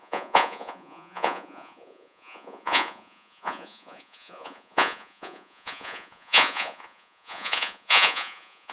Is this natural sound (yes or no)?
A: no